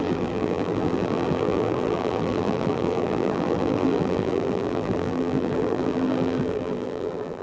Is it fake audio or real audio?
fake